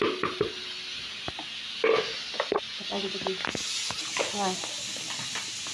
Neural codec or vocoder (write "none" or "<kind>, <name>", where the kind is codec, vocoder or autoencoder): none